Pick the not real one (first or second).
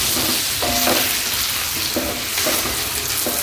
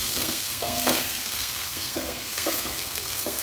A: second